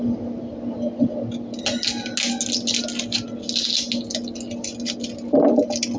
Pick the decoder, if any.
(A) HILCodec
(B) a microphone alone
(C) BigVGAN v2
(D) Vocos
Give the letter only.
B